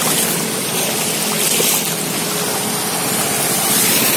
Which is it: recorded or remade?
recorded